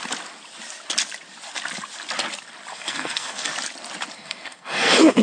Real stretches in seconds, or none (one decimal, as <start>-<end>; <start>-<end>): 0.0-2.7; 3.5-4.2